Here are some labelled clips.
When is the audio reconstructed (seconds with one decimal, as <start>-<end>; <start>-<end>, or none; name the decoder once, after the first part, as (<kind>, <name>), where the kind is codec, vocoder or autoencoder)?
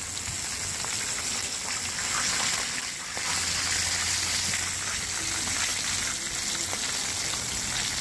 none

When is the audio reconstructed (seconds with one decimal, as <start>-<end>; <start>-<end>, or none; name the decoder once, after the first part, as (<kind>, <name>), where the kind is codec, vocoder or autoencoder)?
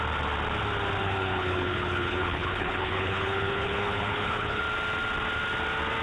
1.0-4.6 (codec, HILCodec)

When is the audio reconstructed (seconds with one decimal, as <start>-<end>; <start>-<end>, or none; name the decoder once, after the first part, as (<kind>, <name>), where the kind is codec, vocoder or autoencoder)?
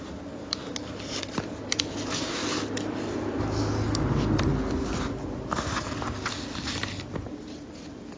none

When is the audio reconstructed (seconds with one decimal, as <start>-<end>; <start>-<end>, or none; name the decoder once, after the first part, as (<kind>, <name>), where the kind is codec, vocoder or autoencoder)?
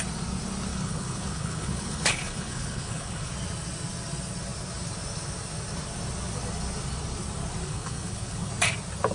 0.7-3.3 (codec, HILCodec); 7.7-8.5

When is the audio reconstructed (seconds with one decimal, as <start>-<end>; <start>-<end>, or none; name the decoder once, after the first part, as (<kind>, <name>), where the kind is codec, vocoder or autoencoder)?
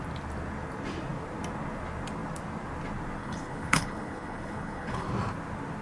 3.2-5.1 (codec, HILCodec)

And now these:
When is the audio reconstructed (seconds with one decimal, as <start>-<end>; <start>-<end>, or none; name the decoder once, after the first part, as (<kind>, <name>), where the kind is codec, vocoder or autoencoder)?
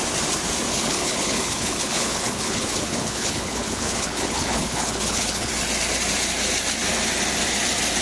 0.7-5.5 (codec, HILCodec)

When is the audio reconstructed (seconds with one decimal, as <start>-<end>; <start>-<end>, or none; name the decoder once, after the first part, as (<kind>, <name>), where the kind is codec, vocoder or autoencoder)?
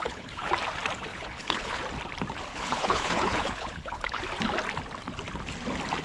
0.0-0.5 (codec, HILCodec); 1.1-1.8; 2.5-4.2